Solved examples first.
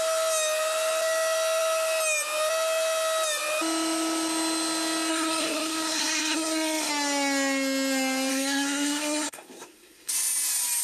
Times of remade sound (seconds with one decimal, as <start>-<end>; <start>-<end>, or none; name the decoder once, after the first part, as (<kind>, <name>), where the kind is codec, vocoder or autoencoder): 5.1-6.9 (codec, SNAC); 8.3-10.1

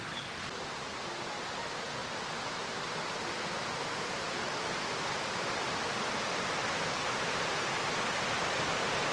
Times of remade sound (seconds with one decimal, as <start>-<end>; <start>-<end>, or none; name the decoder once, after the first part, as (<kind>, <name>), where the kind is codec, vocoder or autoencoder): 0.0-9.1 (vocoder, BigVGAN v2)

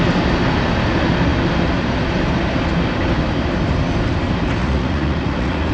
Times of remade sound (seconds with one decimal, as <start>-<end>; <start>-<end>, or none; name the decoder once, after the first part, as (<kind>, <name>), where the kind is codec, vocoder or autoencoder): 4.6-5.7 (vocoder, Vocos)

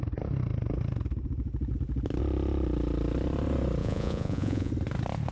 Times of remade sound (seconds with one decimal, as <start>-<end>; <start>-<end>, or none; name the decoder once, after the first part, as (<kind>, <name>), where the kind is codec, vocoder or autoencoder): 3.8-4.7 (vocoder, Vocos)